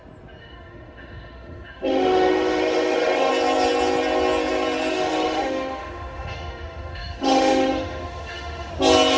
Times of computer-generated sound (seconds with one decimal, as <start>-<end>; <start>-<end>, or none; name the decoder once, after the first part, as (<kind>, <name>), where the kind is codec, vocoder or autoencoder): 0.4-3.3 (autoencoder, DAC-VAE); 4.9-8.7